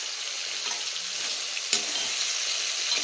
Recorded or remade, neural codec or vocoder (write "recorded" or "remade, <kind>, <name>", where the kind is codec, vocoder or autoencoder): recorded